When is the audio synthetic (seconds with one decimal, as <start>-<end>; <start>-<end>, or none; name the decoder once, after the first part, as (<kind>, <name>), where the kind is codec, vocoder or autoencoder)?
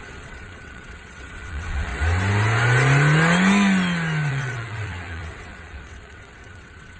0.0-1.9 (vocoder, WaveNeXt); 4.3-7.0